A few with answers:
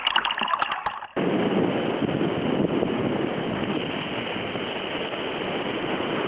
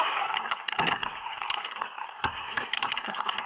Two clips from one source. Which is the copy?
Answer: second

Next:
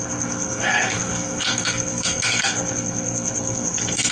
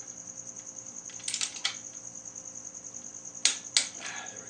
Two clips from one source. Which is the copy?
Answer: first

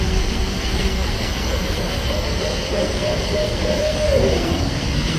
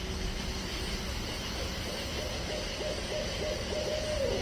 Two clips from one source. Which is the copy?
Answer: first